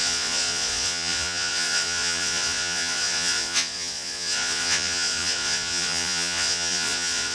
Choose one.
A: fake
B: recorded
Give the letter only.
A